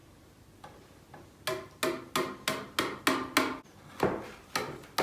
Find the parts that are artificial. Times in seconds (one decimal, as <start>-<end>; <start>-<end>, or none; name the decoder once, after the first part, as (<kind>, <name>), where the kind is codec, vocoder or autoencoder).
none